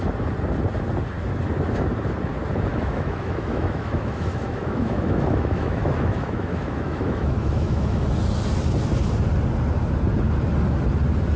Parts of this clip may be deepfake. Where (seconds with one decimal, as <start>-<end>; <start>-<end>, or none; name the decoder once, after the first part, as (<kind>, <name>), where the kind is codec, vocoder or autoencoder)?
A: 2.7-8.0 (autoencoder, DAC-VAE)